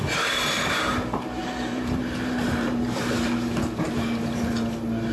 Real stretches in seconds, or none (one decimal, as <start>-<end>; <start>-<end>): 0.0-1.4; 4.5-5.1